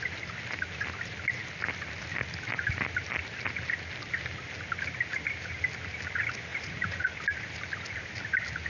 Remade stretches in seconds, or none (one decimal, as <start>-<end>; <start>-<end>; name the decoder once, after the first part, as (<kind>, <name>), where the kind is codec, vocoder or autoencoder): 6.5-7.1 (vocoder, Vocos)